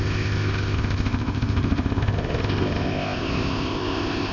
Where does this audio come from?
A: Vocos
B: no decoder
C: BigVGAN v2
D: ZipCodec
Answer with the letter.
D